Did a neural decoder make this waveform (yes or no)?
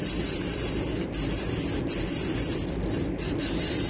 no